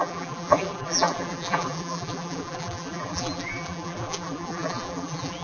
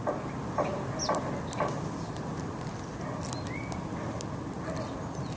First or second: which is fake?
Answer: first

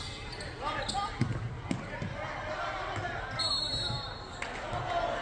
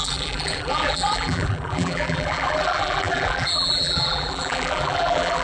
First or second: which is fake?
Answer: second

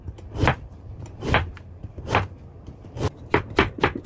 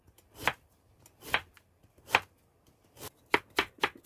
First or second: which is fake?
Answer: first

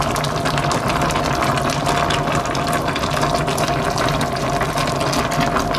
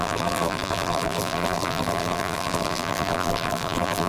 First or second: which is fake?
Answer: second